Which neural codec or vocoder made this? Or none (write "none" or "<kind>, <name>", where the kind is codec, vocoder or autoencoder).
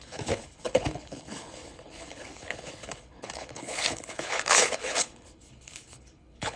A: codec, HILCodec